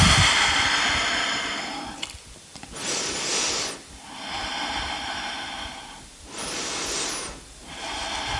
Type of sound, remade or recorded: recorded